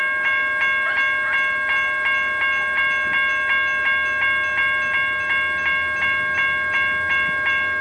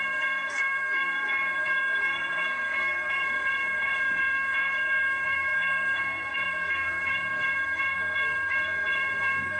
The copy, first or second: second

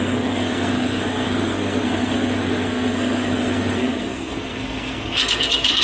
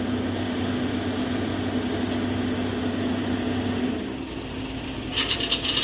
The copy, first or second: first